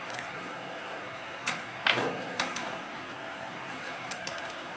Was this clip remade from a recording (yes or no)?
yes